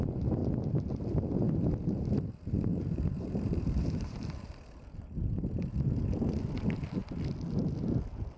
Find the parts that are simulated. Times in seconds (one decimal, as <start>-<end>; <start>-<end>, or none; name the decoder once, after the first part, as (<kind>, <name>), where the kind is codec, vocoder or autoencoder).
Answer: 2.7-4.5 (vocoder, BigVGAN v2)

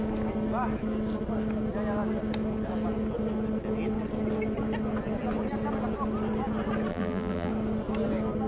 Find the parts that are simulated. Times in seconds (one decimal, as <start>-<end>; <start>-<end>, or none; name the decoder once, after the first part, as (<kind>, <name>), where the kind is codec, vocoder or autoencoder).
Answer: 6.9-7.5 (vocoder, BigVGAN v2)